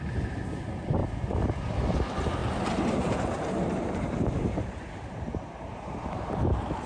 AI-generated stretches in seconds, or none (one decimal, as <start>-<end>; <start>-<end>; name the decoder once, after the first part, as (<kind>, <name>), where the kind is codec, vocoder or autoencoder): 1.0-1.7 (vocoder, BigVGAN v2); 2.4-6.4